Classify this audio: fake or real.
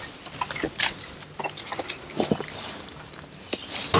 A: real